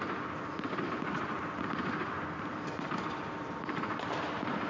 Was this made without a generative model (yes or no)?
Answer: yes